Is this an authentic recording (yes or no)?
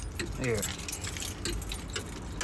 yes